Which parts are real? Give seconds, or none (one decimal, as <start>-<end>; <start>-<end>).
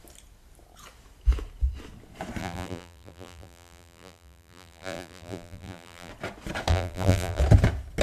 0.0-2.4; 6.1-6.7; 7.4-8.0